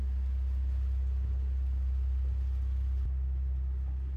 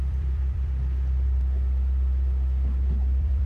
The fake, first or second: second